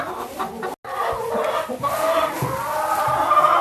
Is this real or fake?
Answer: real